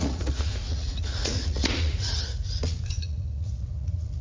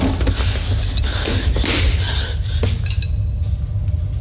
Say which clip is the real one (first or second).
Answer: second